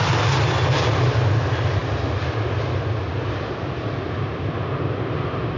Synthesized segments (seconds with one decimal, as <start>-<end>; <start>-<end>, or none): none